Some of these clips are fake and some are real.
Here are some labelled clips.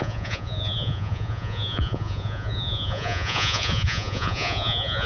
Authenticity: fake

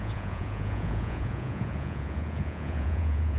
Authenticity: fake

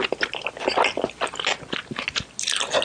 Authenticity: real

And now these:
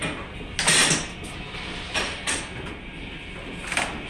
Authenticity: real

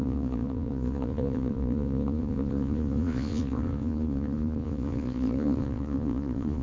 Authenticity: fake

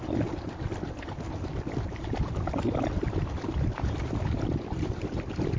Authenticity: real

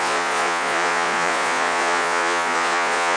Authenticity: fake